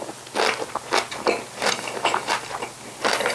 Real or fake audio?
real